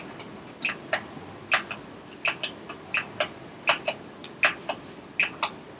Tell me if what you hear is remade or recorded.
recorded